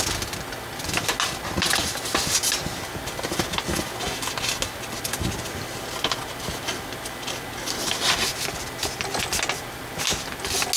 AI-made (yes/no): no